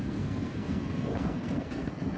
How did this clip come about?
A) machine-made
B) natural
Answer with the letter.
A